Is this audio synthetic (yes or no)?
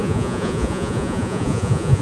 yes